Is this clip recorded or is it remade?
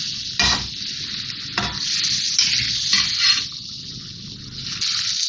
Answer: recorded